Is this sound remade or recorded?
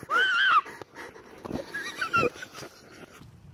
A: recorded